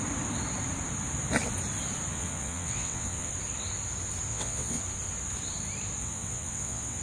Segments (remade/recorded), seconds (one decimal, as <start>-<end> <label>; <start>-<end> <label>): 0.0-2.1 recorded; 2.1-3.3 remade; 3.3-4.3 recorded; 4.3-4.8 remade; 4.8-6.0 recorded; 6.0-7.0 remade